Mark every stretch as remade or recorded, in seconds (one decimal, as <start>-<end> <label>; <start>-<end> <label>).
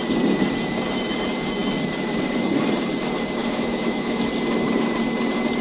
0.0-3.4 recorded; 3.4-4.2 remade; 4.2-5.6 recorded